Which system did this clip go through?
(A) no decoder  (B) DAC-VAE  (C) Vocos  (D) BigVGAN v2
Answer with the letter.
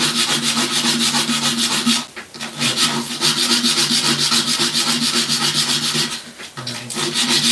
A